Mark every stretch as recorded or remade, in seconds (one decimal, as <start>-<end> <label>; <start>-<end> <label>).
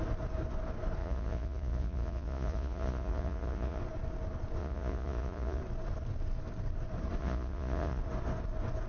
0.0-1.0 recorded; 1.0-3.8 remade; 3.8-4.6 recorded; 4.6-5.6 remade; 5.6-7.2 recorded; 7.2-8.0 remade; 8.0-8.9 recorded